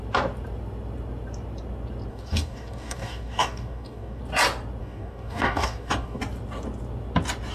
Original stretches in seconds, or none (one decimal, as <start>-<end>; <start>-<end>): 0.0-2.1; 4.2-4.8; 6.2-7.5